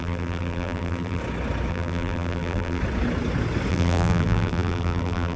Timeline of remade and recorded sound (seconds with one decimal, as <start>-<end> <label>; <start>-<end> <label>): 0.0-1.2 remade; 1.2-1.7 recorded; 1.7-2.8 remade; 2.8-3.7 recorded; 3.7-5.4 remade